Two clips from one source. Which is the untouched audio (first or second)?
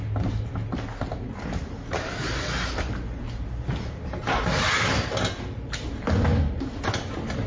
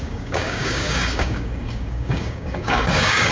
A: first